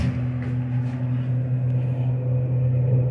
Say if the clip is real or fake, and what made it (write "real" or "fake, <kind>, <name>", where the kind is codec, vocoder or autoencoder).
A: real